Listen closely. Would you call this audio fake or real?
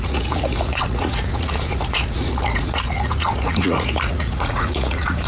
fake